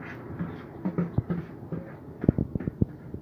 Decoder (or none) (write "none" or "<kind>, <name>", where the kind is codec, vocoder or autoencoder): none